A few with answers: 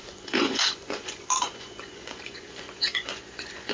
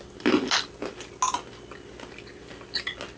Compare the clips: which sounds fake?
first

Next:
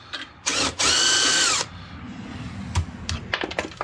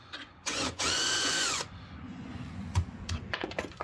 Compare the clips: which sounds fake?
second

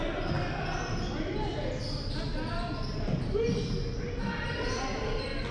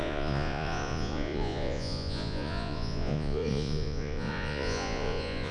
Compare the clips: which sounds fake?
second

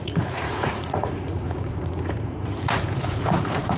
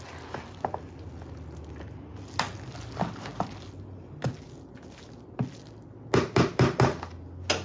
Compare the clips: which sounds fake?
first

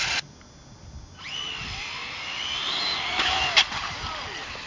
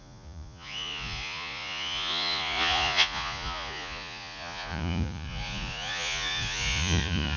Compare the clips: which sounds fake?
second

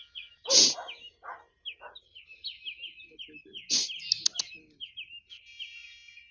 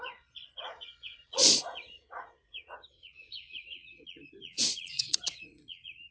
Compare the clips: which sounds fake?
second